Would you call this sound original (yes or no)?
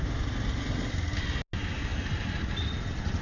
yes